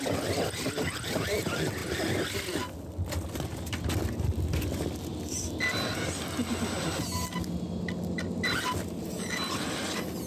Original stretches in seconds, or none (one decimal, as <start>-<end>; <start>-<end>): 0.0-10.3